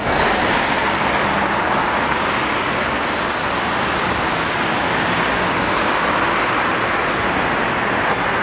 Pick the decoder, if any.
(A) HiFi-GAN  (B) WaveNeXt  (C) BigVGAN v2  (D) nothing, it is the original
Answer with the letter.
D